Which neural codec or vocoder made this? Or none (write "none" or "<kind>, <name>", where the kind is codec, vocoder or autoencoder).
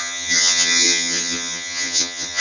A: vocoder, HiFi-GAN